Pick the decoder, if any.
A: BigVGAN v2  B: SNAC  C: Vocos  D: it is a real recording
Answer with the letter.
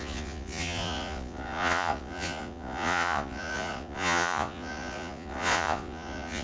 C